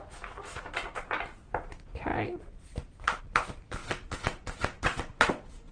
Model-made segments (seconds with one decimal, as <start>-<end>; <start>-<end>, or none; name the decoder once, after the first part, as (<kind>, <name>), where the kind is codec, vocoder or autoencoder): 3.8-5.7 (vocoder, WaveNeXt)